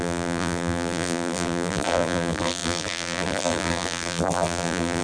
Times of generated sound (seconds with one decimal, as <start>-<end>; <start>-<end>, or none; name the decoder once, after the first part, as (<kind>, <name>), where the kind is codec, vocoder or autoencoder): 0.0-5.0 (vocoder, BigVGAN v2)